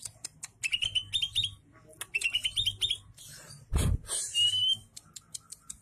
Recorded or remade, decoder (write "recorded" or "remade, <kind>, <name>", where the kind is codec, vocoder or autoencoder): recorded